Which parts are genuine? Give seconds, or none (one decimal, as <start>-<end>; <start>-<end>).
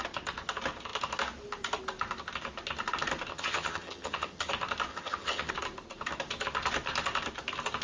0.0-3.3; 4.5-4.9; 5.5-7.8